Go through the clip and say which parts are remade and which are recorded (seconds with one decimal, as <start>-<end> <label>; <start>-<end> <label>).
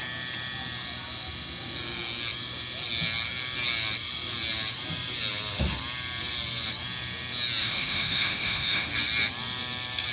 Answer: 0.0-7.6 recorded; 7.6-8.9 remade; 8.9-10.1 recorded